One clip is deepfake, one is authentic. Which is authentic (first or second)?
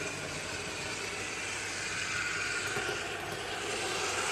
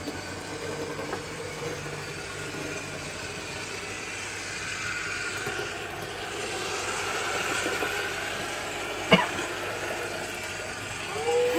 second